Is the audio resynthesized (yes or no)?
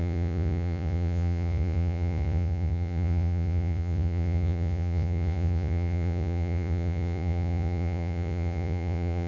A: yes